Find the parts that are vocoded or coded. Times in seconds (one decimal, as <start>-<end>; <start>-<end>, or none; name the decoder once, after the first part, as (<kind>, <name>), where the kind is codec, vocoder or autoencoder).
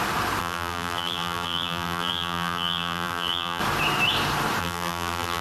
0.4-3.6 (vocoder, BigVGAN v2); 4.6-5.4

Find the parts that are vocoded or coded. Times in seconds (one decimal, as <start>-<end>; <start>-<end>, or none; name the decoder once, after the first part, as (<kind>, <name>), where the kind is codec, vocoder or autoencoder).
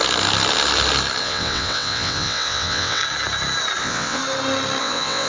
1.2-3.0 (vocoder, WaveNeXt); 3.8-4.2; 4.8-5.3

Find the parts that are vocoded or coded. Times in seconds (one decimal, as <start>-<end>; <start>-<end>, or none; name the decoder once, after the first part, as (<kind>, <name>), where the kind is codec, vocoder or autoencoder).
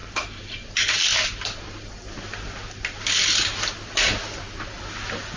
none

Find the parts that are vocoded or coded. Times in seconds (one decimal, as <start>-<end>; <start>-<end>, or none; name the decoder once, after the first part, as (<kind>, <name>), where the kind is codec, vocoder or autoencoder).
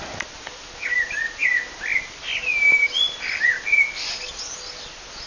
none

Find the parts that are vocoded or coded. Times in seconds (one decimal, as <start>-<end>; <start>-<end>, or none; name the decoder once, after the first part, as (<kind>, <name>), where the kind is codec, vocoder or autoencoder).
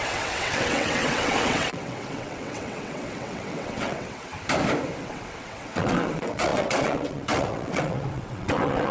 0.0-4.3 (vocoder, WaveNeXt); 5.0-8.9